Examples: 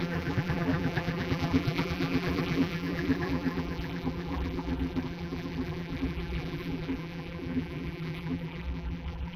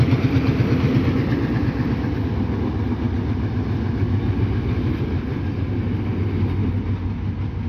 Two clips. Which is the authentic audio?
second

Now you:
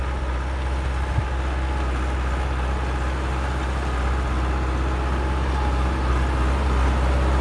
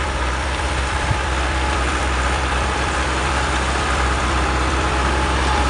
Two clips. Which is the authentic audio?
first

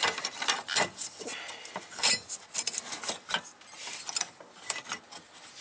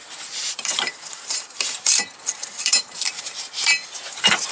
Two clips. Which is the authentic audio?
first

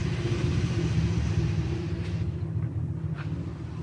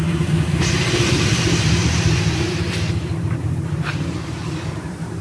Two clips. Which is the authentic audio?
first